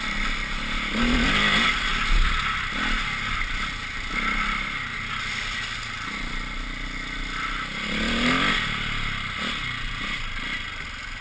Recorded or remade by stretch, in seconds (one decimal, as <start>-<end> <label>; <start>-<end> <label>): 0.0-11.2 recorded